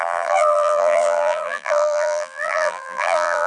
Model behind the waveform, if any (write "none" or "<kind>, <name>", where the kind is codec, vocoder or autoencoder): vocoder, BigVGAN v2